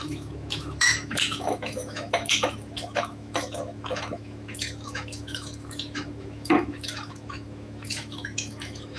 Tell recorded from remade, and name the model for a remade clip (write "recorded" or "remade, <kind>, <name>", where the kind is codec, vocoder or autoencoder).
remade, autoencoder, DAC-VAE